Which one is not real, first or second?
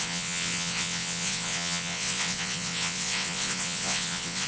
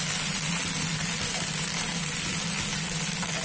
first